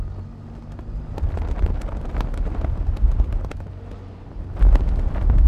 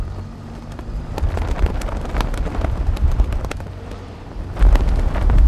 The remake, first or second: second